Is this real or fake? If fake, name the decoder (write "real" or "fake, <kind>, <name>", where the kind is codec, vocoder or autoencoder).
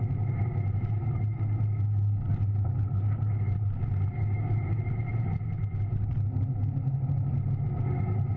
real